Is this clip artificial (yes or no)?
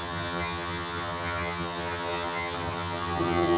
yes